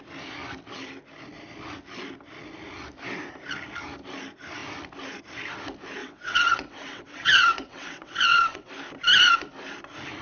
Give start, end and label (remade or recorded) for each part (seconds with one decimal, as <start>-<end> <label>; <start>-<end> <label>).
0.0-6.0 recorded; 6.0-8.7 remade; 8.7-10.2 recorded